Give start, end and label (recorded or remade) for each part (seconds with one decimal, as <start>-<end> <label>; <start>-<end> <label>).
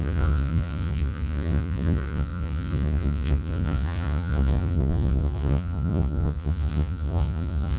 0.0-7.8 remade